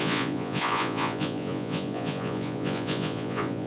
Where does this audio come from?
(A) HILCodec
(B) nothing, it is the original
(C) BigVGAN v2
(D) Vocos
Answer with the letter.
D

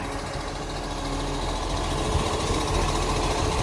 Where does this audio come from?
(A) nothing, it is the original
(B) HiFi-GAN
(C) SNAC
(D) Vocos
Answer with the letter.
A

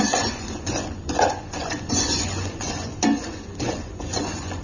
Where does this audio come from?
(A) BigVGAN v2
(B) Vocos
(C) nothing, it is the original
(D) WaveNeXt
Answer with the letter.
B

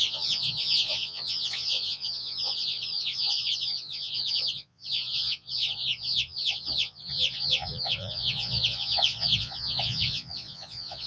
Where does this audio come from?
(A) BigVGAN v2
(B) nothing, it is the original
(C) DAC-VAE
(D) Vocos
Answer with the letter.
D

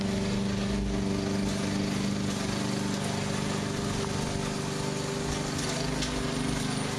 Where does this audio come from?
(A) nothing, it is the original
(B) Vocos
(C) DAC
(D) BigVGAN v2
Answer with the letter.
A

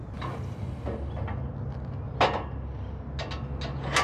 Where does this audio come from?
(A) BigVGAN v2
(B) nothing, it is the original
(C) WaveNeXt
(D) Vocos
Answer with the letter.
B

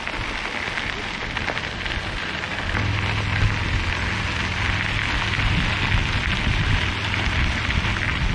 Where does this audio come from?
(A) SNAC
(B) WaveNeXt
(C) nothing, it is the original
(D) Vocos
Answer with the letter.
C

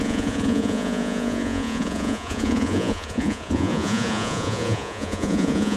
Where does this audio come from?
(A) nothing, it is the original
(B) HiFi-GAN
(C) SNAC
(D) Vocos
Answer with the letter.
D